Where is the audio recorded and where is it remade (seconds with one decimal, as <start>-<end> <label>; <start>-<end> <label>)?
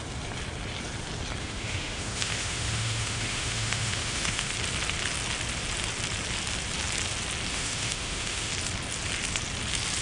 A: 0.0-1.4 recorded; 1.4-4.5 remade; 4.5-7.5 recorded; 7.5-8.5 remade; 8.5-10.0 recorded